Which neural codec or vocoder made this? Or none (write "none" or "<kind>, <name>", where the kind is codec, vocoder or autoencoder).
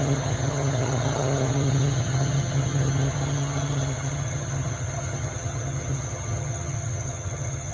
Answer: vocoder, HiFi-GAN